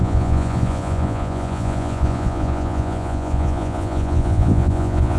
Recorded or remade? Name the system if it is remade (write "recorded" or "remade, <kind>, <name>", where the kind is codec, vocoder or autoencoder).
remade, vocoder, Vocos